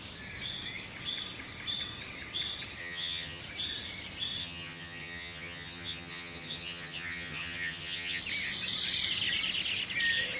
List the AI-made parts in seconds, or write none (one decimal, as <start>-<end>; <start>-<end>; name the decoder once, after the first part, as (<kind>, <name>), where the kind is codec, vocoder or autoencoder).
2.8-3.4 (vocoder, HiFi-GAN); 4.4-8.2